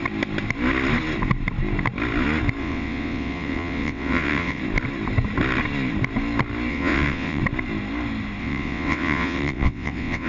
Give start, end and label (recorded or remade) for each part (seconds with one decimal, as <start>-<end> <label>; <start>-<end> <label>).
0.0-2.6 recorded; 2.6-4.6 remade; 4.6-6.7 recorded; 6.7-7.4 remade; 7.4-8.4 recorded; 8.4-10.3 remade